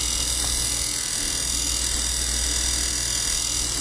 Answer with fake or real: real